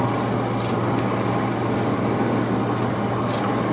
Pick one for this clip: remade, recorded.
recorded